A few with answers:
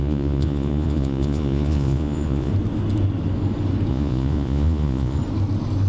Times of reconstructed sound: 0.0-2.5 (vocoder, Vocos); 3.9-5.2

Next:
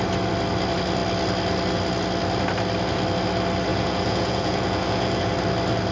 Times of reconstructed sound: 3.7-5.3 (vocoder, Vocos)

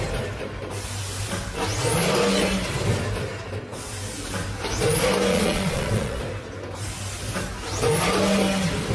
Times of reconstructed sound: 5.3-6.2 (vocoder, Vocos)